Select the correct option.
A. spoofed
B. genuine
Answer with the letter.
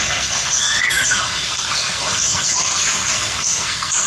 A